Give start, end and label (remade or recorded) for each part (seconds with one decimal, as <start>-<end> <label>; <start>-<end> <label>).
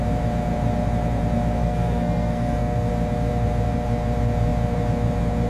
0.0-1.6 recorded; 1.6-2.9 remade; 2.9-5.5 recorded